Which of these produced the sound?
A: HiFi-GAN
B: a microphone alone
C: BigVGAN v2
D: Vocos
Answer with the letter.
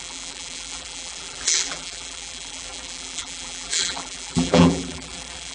C